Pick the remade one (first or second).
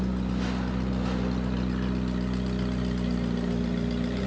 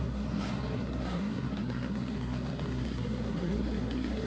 second